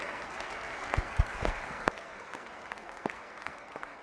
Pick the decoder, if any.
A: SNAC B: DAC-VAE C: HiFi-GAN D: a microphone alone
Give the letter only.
A